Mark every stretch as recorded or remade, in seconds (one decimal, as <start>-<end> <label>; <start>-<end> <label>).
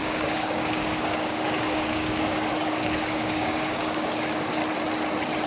0.0-4.6 remade; 4.6-5.5 recorded